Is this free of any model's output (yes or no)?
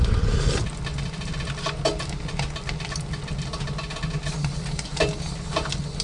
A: yes